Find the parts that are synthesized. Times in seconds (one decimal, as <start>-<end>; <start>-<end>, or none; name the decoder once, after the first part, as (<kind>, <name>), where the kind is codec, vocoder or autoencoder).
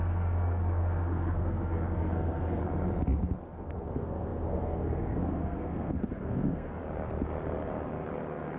0.0-2.6 (codec, SNAC); 3.4-6.8